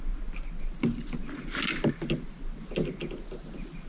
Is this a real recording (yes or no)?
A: yes